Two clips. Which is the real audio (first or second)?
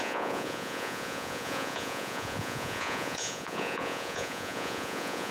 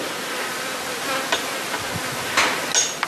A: second